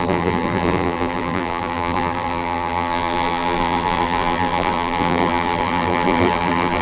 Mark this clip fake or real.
fake